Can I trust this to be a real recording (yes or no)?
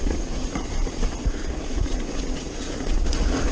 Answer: no